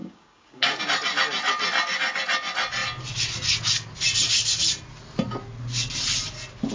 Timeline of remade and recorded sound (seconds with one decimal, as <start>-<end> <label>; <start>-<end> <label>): 0.0-0.8 remade; 0.8-6.7 recorded